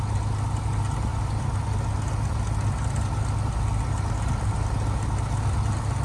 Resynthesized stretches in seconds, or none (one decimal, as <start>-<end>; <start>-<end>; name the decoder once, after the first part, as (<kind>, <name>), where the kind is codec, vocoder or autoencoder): none